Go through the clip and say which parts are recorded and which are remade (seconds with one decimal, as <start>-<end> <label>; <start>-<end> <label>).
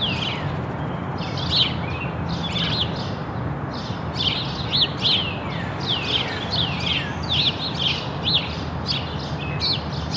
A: 0.0-10.2 recorded